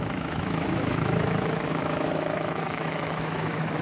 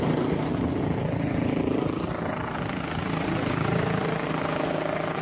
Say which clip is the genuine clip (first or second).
second